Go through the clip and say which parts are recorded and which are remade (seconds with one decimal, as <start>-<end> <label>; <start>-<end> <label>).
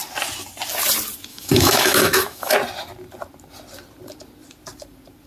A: 0.0-1.3 recorded; 1.3-2.5 remade; 2.5-5.3 recorded